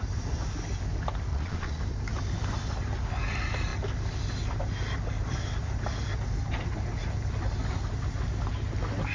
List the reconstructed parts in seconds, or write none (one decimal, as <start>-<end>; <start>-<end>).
1.3-1.8